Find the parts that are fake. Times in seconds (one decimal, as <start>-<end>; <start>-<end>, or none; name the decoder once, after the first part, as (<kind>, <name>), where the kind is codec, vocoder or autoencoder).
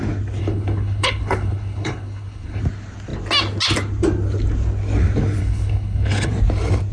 0.4-2.6 (codec, HILCodec); 5.4-6.3